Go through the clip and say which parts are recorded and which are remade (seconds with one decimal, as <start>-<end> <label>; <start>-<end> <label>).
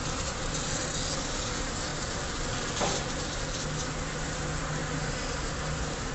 0.0-1.9 recorded; 1.9-3.6 remade; 3.6-6.1 recorded